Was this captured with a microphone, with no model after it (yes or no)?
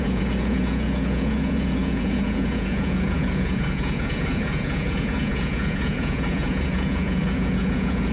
no